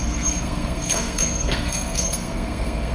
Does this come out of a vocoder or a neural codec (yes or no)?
yes